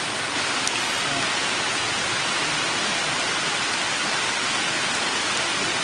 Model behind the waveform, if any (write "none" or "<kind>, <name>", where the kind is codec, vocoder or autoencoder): none